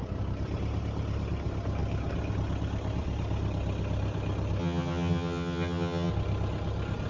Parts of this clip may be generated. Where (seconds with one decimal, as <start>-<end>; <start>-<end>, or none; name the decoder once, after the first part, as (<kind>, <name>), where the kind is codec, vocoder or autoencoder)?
4.6-6.1 (vocoder, HiFi-GAN)